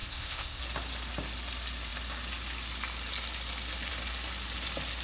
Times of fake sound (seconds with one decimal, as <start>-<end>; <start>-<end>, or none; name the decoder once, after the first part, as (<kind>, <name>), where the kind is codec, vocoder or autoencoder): 0.0-0.6 (codec, ZipCodec)